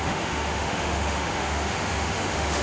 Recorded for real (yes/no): no